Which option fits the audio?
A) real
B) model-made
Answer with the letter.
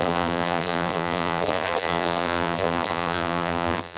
B